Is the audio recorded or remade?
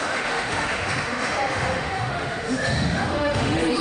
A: remade